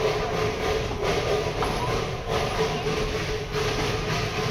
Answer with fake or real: real